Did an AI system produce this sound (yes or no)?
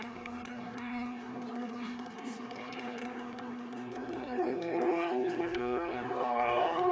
yes